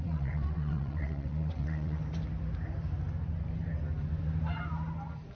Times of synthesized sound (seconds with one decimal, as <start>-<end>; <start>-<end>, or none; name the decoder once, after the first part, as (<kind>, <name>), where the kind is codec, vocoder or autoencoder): 0.0-2.0 (vocoder, WaveNeXt)